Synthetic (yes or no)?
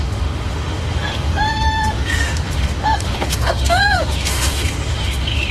yes